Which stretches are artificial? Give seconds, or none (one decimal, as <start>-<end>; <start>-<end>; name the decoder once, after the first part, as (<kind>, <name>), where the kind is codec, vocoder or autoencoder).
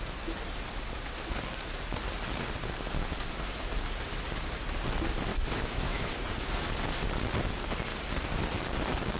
5.3-6.1 (autoencoder, DAC-VAE)